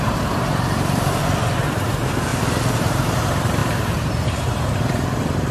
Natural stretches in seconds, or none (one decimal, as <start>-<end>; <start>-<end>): 1.2-1.9; 2.3-2.8